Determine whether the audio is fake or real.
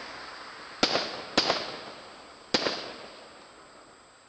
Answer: real